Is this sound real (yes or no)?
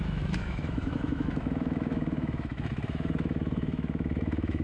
no